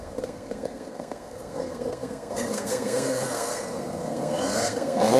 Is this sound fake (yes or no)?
yes